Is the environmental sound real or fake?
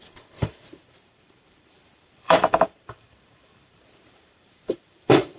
fake